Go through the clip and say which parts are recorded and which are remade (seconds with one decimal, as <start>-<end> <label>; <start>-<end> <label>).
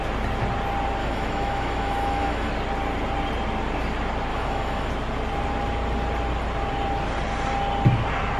0.0-1.0 recorded; 1.0-2.5 remade; 2.5-4.3 recorded; 4.3-4.9 remade; 4.9-8.4 recorded